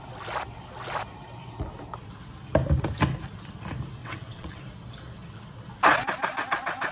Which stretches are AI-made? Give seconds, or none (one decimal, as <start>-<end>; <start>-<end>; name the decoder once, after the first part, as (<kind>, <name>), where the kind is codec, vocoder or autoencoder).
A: 4.0-4.6 (vocoder, WaveNeXt)

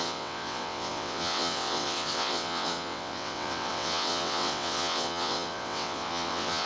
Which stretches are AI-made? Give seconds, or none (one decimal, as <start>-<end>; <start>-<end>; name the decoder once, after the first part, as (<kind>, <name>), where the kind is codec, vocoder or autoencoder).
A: 0.0-6.7 (vocoder, WaveNeXt)

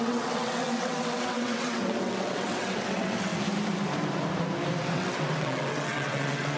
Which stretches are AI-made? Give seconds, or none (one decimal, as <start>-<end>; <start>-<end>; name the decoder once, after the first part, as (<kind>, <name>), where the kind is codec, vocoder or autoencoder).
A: 0.0-3.3 (vocoder, WaveNeXt); 4.8-6.6